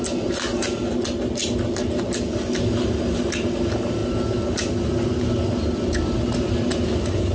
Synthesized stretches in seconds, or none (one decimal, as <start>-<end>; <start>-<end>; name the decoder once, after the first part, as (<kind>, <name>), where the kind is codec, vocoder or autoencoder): none